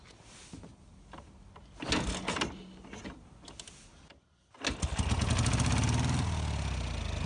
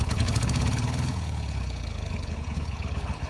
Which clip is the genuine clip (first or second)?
first